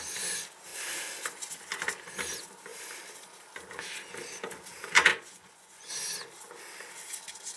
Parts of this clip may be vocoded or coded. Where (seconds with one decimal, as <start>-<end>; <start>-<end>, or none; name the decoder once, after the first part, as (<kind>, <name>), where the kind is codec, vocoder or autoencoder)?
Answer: 5.1-5.9 (vocoder, Vocos)